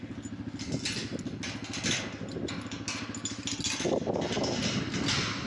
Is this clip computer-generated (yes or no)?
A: no